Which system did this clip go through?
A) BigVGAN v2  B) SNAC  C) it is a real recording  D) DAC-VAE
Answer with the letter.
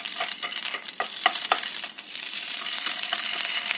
A